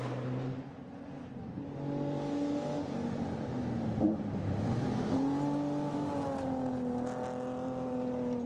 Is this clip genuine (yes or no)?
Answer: yes